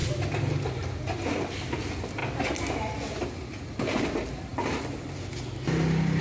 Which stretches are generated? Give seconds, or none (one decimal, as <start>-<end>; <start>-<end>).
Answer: none